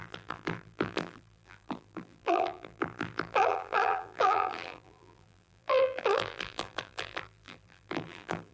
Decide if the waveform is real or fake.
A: fake